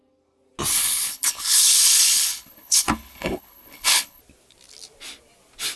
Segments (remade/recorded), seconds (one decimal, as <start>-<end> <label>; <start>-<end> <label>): 0.0-0.7 recorded; 0.7-4.2 remade; 4.2-5.8 recorded